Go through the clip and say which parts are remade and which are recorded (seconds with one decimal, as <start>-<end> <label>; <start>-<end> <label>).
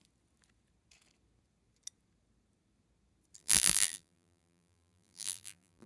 0.0-3.4 recorded; 3.4-5.9 remade